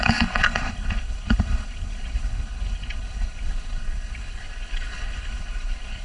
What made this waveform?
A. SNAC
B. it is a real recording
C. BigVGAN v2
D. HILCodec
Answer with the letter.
D